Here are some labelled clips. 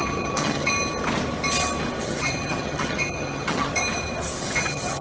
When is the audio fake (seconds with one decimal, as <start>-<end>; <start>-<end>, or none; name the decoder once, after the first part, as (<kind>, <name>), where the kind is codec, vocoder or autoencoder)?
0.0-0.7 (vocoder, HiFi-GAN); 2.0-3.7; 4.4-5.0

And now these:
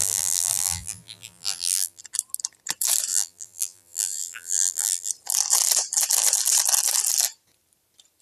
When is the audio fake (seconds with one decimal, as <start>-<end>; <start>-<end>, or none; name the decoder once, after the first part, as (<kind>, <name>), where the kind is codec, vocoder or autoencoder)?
0.0-2.0 (vocoder, BigVGAN v2); 3.1-5.1

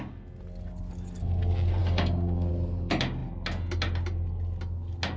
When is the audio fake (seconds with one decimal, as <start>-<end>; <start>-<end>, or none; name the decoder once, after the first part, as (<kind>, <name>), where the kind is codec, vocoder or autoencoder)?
1.8-2.5 (codec, DAC)